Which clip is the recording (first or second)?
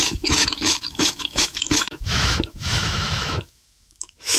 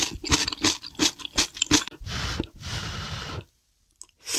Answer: second